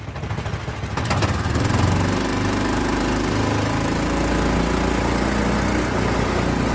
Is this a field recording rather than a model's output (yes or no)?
yes